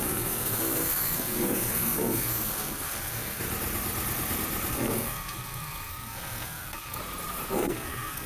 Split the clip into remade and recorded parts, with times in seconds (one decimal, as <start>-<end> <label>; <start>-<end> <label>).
0.0-3.4 remade; 3.4-4.7 recorded; 4.7-7.0 remade; 7.0-7.5 recorded; 7.5-8.3 remade